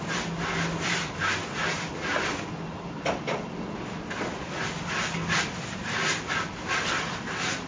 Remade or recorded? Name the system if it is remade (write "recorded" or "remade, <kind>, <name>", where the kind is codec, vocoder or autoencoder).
recorded